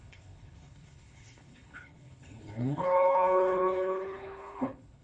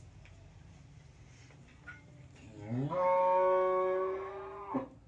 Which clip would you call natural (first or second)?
second